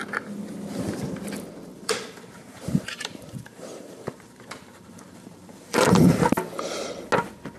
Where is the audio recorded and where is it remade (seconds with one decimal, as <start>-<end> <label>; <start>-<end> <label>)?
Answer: 0.0-1.7 recorded; 1.7-6.3 remade; 6.3-7.6 recorded